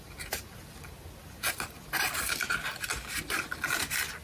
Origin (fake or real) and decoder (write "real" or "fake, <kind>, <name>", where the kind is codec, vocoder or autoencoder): real